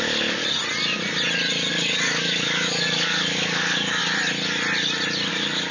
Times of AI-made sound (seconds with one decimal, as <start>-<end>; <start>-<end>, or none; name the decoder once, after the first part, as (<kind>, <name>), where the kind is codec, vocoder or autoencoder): 0.0-0.4 (codec, DAC); 1.7-4.0; 5.3-5.7